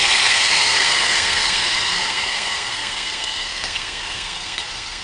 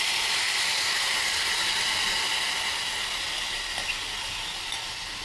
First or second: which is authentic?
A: second